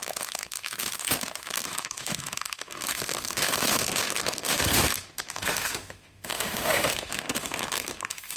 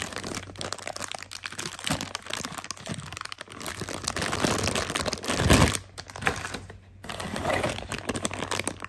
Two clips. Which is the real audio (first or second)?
second